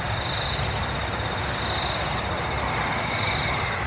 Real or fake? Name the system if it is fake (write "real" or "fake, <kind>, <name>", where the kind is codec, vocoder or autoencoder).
real